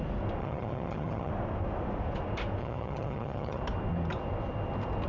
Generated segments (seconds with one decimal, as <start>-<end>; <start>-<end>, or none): 0.4-1.3; 2.6-3.6